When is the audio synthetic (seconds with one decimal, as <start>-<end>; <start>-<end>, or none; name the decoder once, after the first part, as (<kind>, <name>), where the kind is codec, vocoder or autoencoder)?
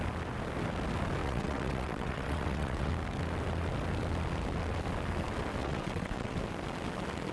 1.2-2.9 (vocoder, WaveNeXt); 5.6-6.4